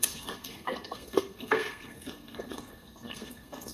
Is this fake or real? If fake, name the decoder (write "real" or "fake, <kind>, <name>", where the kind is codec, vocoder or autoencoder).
fake, codec, SNAC